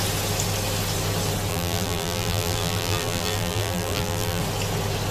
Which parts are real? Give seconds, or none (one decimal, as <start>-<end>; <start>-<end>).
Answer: 0.0-1.5; 4.4-5.1